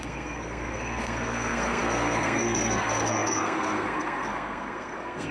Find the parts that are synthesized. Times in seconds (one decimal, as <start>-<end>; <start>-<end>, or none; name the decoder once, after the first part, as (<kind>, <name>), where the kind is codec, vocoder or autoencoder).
0.0-5.3 (codec, SNAC)